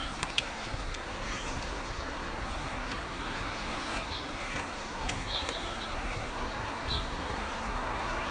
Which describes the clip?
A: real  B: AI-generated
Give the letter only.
B